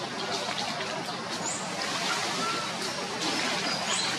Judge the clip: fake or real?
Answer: real